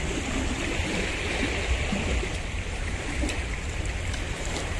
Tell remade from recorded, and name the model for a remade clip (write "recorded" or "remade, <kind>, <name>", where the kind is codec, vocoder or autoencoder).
recorded